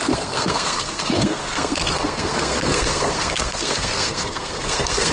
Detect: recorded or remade remade